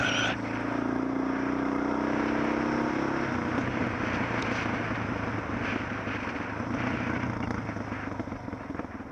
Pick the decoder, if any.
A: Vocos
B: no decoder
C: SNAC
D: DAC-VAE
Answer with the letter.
B